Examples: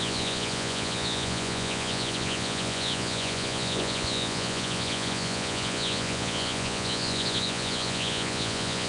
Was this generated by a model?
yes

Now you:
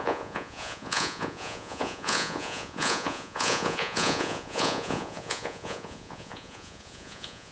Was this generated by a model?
yes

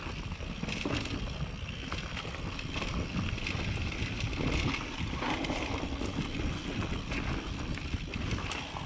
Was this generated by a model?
no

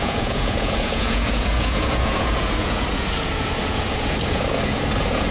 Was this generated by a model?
yes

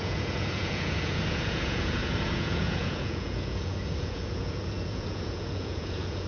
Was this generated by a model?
yes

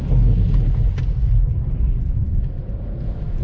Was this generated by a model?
no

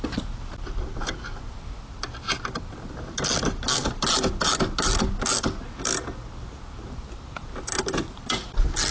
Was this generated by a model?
no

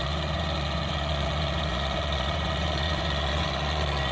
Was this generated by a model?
yes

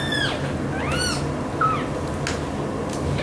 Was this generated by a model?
no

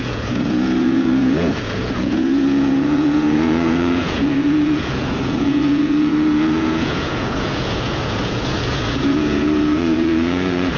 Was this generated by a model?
yes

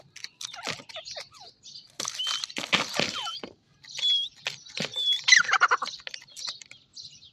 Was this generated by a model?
no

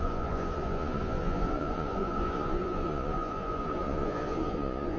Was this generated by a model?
yes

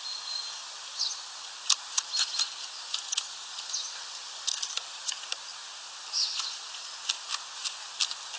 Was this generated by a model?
no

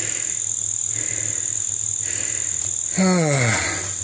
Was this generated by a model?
no